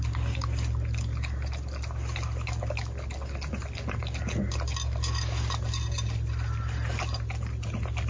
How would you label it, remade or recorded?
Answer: recorded